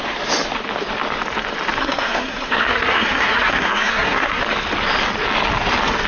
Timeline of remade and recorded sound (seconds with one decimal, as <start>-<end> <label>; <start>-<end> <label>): 0.0-1.8 recorded; 1.8-4.4 remade; 4.4-6.1 recorded